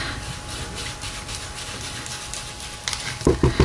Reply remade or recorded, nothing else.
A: recorded